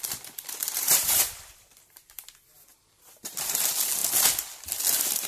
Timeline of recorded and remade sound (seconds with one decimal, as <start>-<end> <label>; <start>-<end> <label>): 0.0-0.6 recorded; 0.6-2.2 remade; 2.2-2.7 recorded; 2.7-3.6 remade; 3.6-5.3 recorded